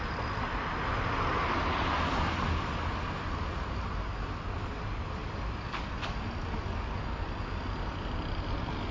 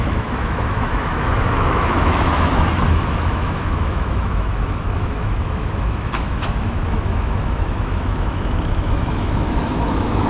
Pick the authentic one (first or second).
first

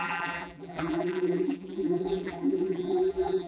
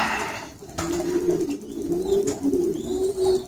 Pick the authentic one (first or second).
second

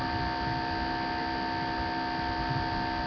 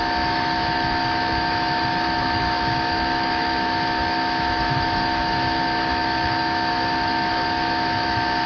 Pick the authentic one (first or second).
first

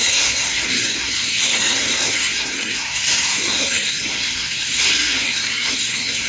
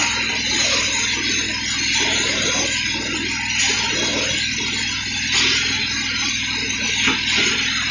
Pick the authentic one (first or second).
second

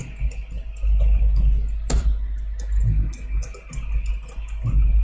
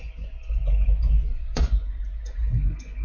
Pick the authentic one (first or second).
first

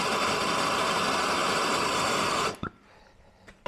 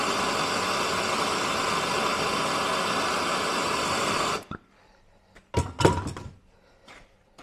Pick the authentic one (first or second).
second